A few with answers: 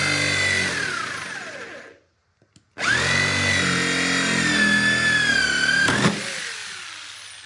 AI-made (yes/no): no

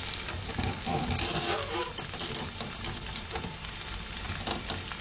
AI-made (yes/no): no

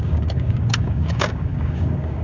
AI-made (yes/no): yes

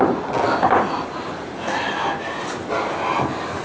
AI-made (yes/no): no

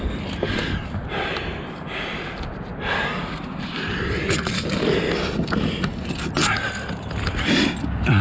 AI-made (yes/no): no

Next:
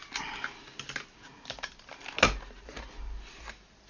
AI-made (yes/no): no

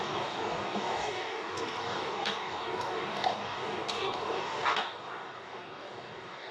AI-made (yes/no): yes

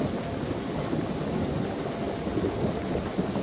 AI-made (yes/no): no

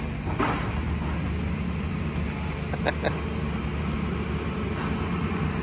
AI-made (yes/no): no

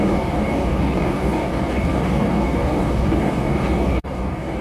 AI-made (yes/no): yes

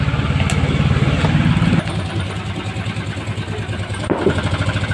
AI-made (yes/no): no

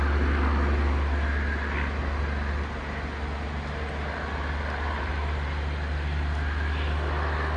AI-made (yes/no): no